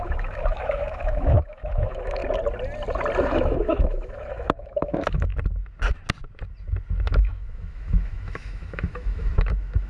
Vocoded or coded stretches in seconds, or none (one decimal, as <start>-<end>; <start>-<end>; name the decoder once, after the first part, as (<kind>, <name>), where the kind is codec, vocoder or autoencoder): 0.0-2.2 (autoencoder, DAC-VAE); 3.2-5.3; 7.0-9.9